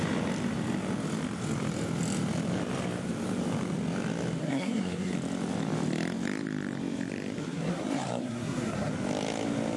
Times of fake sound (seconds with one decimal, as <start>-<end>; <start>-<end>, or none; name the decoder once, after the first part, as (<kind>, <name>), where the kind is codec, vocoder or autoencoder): 4.4-5.1 (codec, SNAC); 7.4-8.9